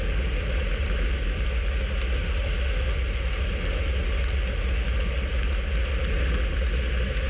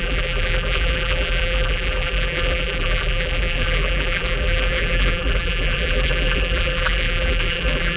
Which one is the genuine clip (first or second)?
first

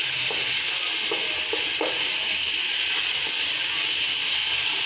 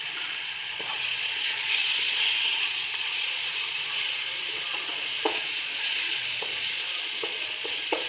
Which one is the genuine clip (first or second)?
first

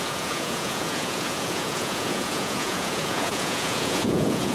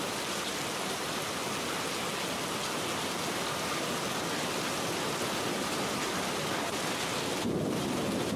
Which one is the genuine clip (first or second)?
second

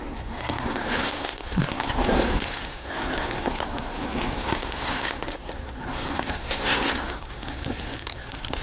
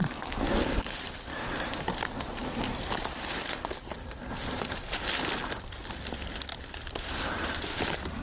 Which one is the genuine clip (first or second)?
second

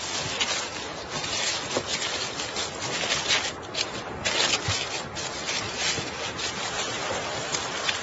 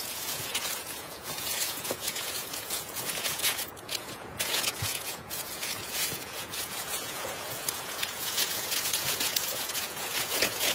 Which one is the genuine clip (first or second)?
first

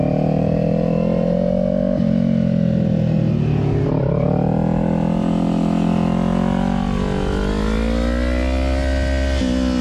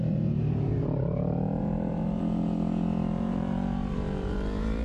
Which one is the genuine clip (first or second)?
first